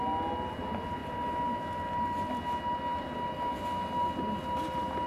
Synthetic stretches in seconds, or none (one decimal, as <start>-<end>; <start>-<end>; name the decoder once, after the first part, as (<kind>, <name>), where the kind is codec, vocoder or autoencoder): none